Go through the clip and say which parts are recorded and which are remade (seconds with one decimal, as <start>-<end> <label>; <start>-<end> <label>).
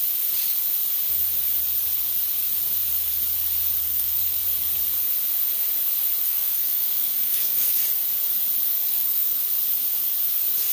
0.0-3.8 recorded; 3.8-4.4 remade; 4.4-6.2 recorded; 6.2-7.8 remade; 7.8-8.8 recorded; 8.8-9.4 remade; 9.4-10.7 recorded